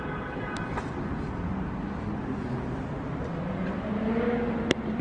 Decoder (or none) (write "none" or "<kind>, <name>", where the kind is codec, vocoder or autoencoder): none